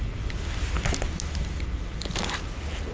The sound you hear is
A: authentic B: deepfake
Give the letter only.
A